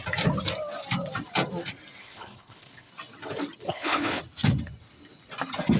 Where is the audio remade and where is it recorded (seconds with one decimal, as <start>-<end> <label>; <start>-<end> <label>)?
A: 0.0-2.0 recorded; 2.0-2.9 remade; 2.9-3.6 recorded; 3.6-4.2 remade; 4.2-5.8 recorded